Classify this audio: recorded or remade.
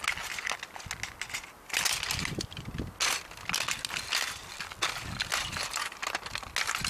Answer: recorded